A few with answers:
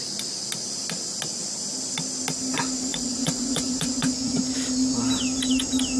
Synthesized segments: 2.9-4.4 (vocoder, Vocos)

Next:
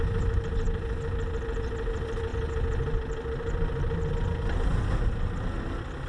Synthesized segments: none

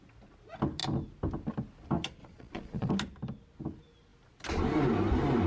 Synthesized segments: 2.2-2.9 (vocoder, Vocos)

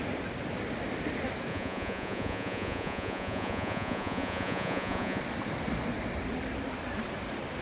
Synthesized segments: 1.5-5.2 (vocoder, Vocos)

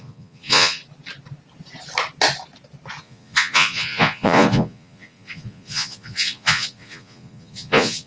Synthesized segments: 0.0-0.8 (vocoder, Vocos); 3.0-8.1

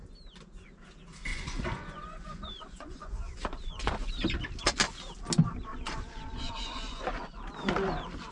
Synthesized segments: 1.3-4.1 (vocoder, Vocos); 5.7-7.4

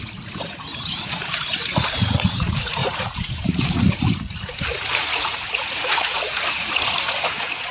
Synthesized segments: 0.0-7.7 (vocoder, Vocos)

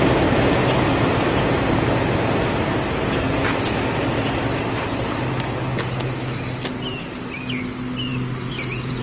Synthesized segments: none